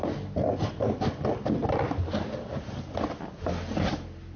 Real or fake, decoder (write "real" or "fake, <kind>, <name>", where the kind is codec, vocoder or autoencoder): real